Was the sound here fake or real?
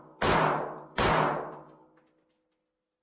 real